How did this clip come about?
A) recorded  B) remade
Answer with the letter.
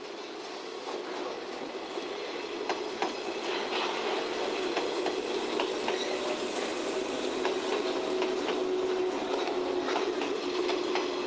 A